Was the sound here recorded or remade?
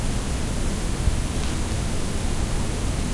recorded